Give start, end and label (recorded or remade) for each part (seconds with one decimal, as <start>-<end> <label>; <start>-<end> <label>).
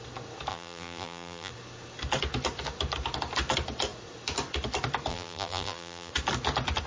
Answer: 0.0-0.5 recorded; 0.5-1.5 remade; 1.5-5.1 recorded; 5.1-6.1 remade; 6.1-6.9 recorded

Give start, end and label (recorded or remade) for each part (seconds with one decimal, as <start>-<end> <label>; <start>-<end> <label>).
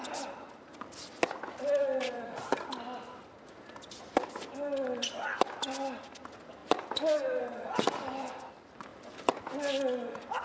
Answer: 0.0-6.6 recorded; 6.6-7.8 remade; 7.8-8.9 recorded; 8.9-9.4 remade; 9.4-10.4 recorded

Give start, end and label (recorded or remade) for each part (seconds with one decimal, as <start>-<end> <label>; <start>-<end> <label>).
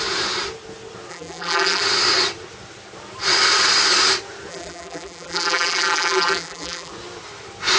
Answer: 0.0-1.1 recorded; 1.1-1.8 remade; 1.8-4.5 recorded; 4.5-6.9 remade; 6.9-7.8 recorded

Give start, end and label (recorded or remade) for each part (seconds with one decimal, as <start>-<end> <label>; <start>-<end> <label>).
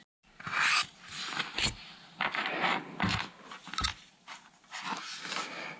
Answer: 0.0-3.9 recorded; 3.9-5.1 remade; 5.1-5.8 recorded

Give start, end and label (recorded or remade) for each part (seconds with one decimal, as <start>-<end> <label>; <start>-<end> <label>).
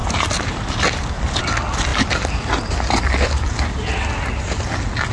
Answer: 0.0-1.4 remade; 1.4-5.1 recorded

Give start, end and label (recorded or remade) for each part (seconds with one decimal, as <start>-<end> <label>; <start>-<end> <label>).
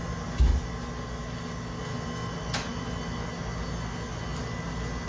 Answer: 0.0-5.1 recorded